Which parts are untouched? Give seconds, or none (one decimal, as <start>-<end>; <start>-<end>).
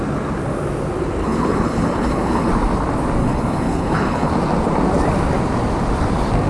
0.0-1.2; 2.5-3.2; 4.3-6.5